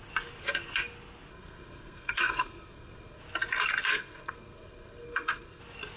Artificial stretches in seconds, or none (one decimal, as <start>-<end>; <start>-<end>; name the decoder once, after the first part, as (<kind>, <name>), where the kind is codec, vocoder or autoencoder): 1.3-3.2 (codec, SNAC); 3.9-5.6